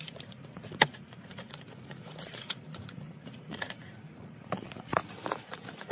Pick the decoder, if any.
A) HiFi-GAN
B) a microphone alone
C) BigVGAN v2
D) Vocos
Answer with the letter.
D